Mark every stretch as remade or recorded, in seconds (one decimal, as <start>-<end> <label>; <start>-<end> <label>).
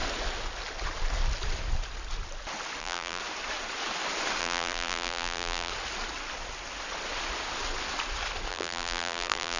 0.0-2.8 recorded; 2.8-3.2 remade; 3.2-4.4 recorded; 4.4-5.7 remade; 5.7-8.5 recorded; 8.5-9.6 remade